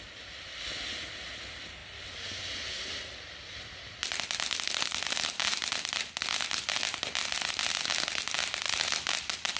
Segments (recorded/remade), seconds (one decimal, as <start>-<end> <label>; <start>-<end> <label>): 0.0-9.6 recorded